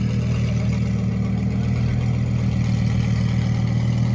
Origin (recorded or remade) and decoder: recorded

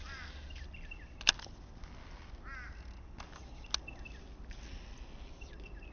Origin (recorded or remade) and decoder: recorded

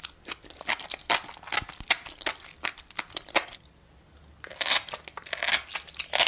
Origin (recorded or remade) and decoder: recorded